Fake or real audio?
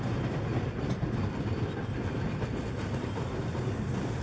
real